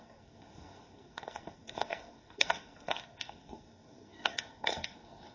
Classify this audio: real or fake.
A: fake